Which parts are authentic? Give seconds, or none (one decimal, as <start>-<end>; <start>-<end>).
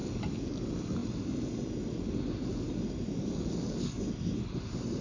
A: 0.0-5.0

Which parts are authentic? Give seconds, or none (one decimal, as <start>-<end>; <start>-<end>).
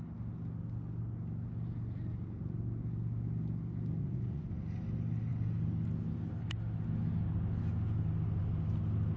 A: 0.0-4.0; 4.5-9.2